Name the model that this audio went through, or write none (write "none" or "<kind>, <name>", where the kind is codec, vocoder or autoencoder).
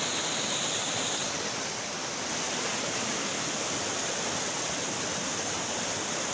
vocoder, BigVGAN v2